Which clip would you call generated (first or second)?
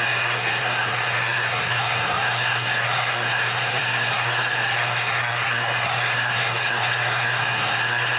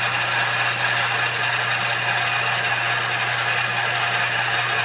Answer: first